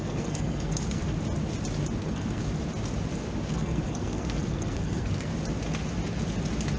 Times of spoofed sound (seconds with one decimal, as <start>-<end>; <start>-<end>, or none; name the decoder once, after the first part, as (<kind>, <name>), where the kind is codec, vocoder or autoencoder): 0.0-1.0 (codec, SNAC); 2.0-2.4; 3.5-5.3